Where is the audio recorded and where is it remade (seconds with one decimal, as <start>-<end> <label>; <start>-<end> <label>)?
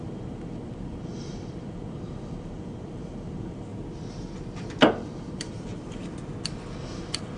0.0-3.7 remade; 3.7-4.9 recorded; 4.9-6.0 remade; 6.0-6.8 recorded; 6.8-7.4 remade